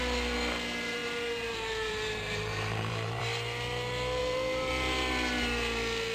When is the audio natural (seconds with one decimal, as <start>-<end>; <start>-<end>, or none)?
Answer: 0.0-1.0; 3.2-4.2; 4.7-6.1